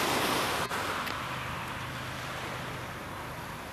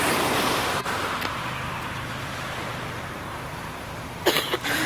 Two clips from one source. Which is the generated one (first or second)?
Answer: second